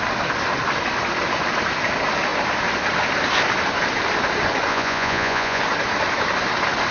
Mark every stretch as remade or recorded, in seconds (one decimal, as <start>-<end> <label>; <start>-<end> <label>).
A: 0.0-4.7 recorded; 4.7-5.6 remade; 5.6-6.9 recorded